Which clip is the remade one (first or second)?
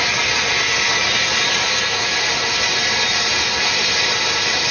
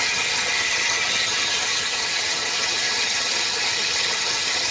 second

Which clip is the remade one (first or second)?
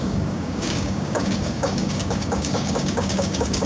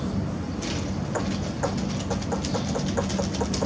first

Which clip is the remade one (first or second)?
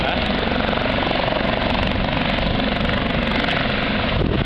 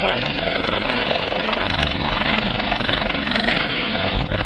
second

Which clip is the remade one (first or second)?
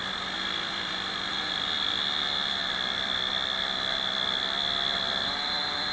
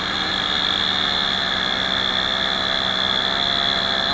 first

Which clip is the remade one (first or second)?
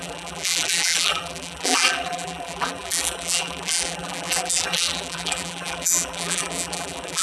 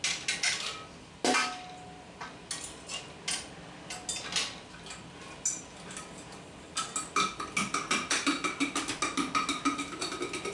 first